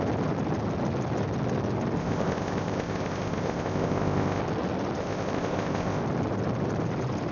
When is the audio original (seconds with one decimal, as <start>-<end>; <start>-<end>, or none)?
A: 0.0-2.0; 4.4-5.0; 6.0-7.3